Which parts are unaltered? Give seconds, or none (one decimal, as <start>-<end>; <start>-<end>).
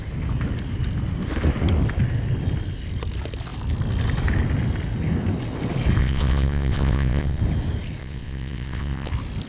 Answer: 0.0-6.0; 7.4-8.0; 9.1-9.5